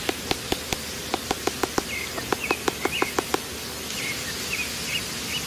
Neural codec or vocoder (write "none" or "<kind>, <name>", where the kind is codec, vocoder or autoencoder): none